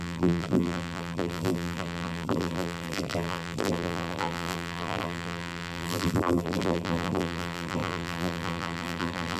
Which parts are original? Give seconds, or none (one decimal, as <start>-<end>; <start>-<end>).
none